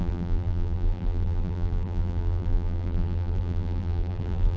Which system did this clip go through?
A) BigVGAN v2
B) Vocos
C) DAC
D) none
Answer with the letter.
A